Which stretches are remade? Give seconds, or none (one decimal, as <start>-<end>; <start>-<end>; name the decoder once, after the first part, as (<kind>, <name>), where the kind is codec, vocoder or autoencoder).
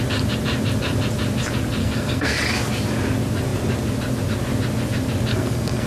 1.8-2.4 (codec, SNAC); 5.3-5.9